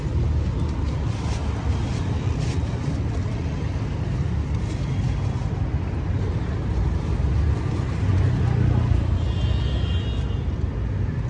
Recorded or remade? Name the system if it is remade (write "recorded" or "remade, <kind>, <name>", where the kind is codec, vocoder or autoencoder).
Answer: recorded